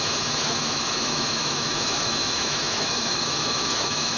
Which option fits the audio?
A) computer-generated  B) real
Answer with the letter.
A